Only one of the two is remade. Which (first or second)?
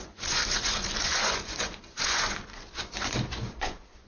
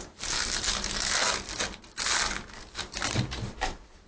first